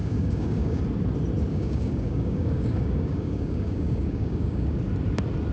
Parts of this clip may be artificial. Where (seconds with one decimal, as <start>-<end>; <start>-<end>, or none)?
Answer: 0.0-0.8; 1.5-4.8